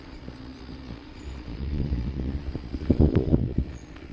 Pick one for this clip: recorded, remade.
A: remade